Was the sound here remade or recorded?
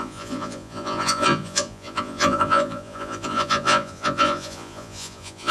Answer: remade